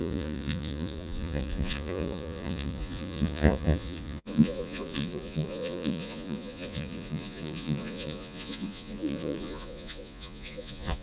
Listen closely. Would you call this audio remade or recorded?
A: remade